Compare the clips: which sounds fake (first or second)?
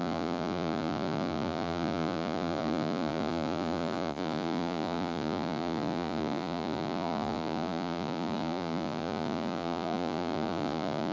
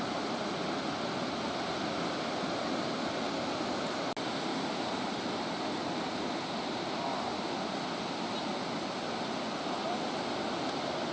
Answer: first